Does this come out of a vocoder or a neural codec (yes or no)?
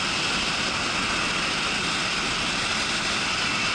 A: no